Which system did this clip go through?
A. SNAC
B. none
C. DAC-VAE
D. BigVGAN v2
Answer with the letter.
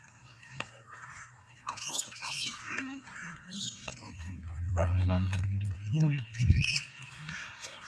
A